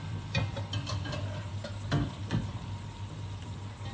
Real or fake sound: fake